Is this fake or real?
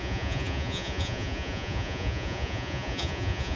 fake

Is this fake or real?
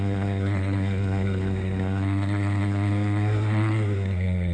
fake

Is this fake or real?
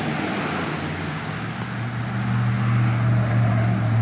real